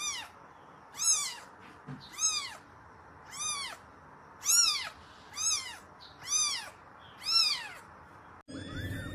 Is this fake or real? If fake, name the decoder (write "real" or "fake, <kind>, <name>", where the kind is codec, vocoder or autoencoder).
real